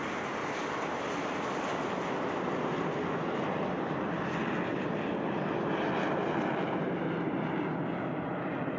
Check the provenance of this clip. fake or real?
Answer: real